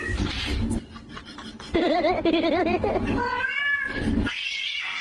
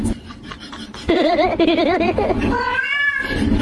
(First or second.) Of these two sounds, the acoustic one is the first